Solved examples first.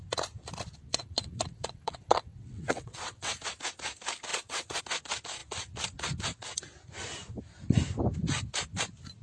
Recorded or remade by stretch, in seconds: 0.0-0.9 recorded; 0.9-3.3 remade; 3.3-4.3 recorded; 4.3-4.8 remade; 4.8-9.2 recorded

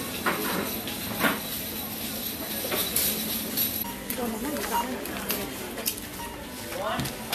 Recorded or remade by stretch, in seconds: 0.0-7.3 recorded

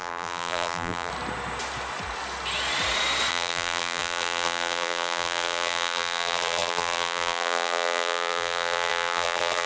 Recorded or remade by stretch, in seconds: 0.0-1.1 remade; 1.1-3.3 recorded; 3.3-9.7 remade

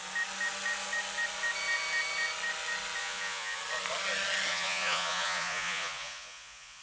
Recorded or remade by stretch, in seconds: 0.0-3.0 recorded; 3.0-3.6 remade; 3.6-4.5 recorded; 4.5-6.8 remade